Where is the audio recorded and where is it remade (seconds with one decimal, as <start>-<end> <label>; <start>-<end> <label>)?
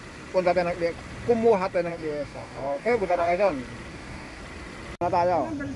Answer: 0.0-1.9 recorded; 1.9-3.5 remade; 3.5-3.9 recorded; 3.9-4.4 remade; 4.4-5.8 recorded